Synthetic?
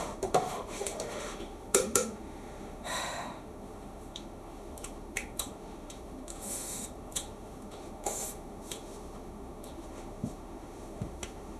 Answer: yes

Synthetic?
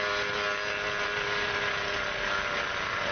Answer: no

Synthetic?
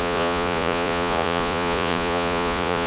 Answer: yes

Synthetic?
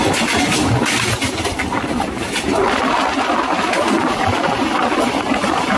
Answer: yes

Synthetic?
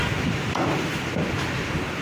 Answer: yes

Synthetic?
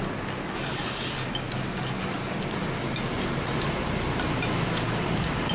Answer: no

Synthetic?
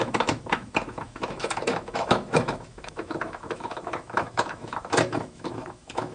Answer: yes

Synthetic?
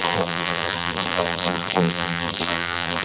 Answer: yes